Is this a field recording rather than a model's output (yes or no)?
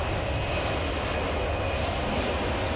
yes